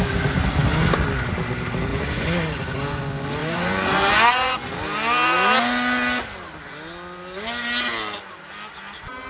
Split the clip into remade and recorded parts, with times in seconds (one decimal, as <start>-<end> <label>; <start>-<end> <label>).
0.0-1.9 recorded; 1.9-3.0 remade; 3.0-3.4 recorded; 3.4-4.6 remade; 4.6-9.3 recorded